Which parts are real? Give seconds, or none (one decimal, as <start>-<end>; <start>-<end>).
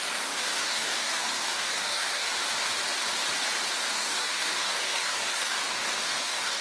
2.3-3.9